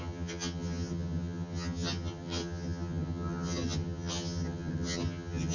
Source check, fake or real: fake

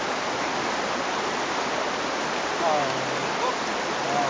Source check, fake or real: real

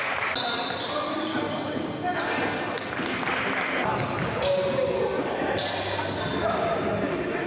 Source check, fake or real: real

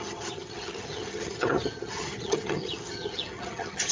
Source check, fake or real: fake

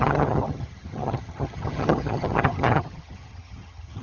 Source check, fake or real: fake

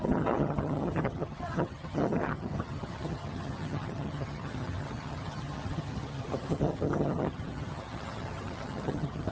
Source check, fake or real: fake